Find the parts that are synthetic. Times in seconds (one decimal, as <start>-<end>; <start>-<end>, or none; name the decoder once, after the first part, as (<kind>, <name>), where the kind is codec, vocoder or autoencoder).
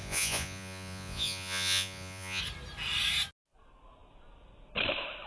0.0-2.4 (vocoder, Vocos)